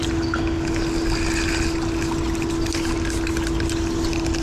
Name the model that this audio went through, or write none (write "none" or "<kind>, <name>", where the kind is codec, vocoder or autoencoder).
none